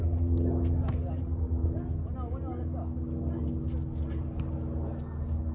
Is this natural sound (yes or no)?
yes